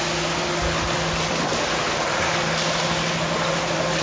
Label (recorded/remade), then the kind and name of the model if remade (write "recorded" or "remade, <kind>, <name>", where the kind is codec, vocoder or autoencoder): recorded